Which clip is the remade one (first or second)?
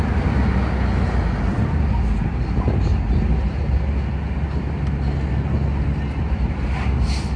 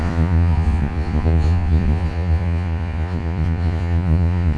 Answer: second